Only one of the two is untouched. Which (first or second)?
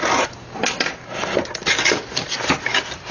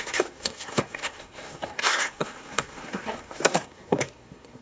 first